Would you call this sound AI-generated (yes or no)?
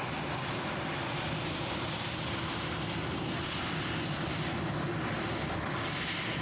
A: no